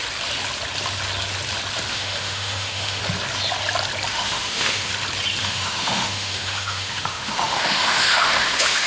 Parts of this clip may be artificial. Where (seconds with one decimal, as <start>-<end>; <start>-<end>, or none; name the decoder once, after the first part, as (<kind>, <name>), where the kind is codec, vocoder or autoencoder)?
1.9-3.0 (autoencoder, DAC-VAE); 4.1-4.9; 5.4-8.9